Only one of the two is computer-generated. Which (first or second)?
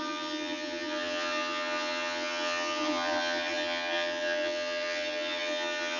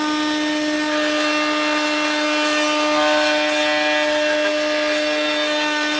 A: first